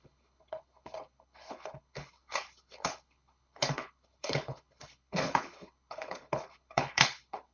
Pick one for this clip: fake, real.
fake